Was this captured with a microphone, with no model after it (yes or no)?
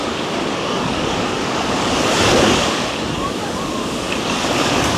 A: no